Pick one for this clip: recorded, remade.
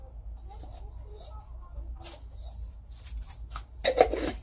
recorded